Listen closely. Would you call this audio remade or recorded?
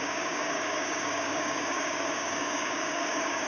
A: remade